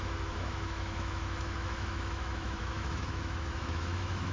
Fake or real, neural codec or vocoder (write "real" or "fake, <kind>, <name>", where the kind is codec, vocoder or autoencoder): fake, autoencoder, DAC-VAE